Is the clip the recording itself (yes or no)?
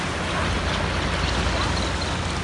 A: yes